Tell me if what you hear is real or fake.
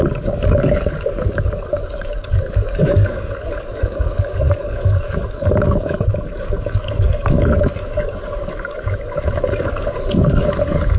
fake